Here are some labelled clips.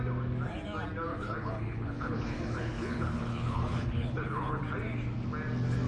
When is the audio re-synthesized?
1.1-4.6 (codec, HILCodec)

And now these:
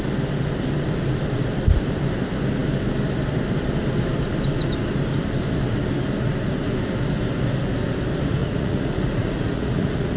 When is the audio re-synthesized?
8.4-10.2 (vocoder, Vocos)

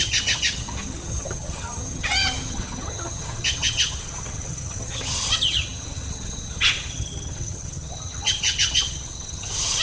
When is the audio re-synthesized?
0.0-9.8 (vocoder, HiFi-GAN)

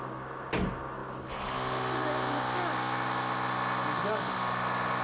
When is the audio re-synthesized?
none

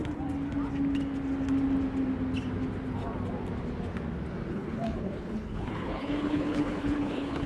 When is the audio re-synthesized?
4.5-7.5 (codec, HILCodec)